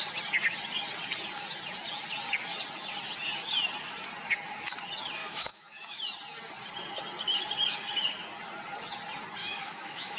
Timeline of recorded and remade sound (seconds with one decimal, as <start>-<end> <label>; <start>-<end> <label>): 0.0-5.2 recorded; 5.2-6.0 remade; 6.0-9.4 recorded; 9.4-10.2 remade